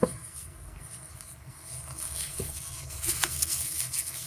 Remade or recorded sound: remade